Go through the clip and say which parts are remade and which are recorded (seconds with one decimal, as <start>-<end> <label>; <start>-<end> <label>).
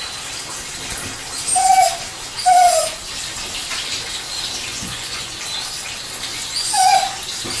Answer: 0.0-4.7 recorded; 4.7-5.4 remade; 5.4-6.3 recorded; 6.3-6.9 remade; 6.9-7.6 recorded